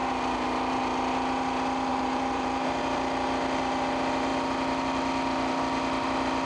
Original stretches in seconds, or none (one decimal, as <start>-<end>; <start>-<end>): 0.0-1.9; 2.8-6.5